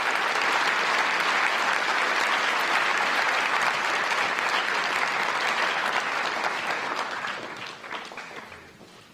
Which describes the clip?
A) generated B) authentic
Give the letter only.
B